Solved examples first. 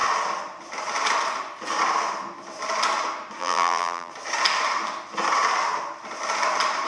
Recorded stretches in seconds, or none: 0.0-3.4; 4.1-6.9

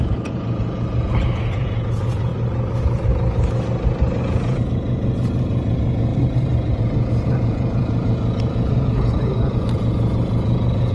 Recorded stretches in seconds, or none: 2.3-4.2; 6.1-6.7

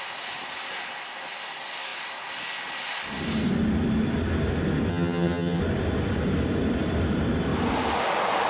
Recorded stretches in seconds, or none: 0.0-4.9; 5.6-8.5

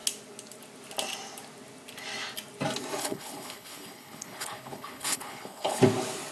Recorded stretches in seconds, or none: 0.0-3.0; 5.8-6.3

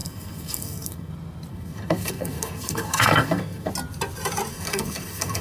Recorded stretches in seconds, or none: 1.1-1.5; 3.7-4.5

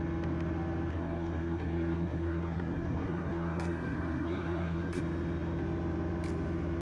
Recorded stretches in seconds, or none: 0.0-0.9; 5.0-6.8